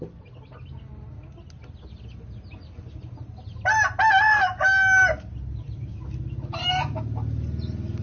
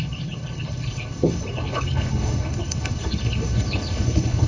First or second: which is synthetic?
second